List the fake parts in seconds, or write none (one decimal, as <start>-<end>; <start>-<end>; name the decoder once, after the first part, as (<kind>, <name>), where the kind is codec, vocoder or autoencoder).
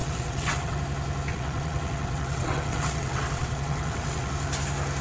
0.0-0.8 (vocoder, WaveNeXt); 1.3-4.3